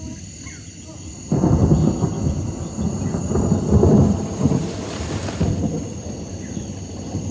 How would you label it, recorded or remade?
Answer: recorded